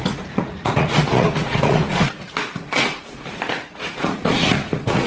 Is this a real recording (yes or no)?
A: no